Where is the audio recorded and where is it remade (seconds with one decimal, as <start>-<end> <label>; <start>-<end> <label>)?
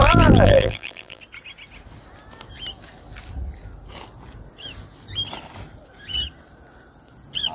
0.0-1.2 remade; 1.2-7.5 recorded